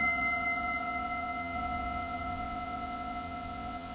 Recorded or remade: remade